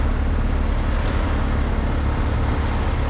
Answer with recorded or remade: recorded